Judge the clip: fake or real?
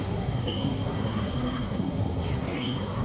fake